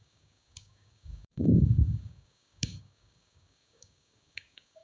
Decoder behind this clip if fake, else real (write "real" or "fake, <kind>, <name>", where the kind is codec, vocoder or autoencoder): fake, codec, DAC